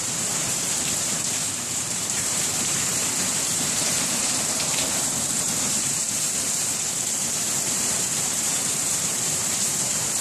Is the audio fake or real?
fake